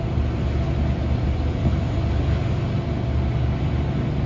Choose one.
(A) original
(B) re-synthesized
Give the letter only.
A